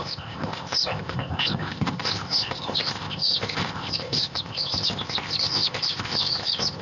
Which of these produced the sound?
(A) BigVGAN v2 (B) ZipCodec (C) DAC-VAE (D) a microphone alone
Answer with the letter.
B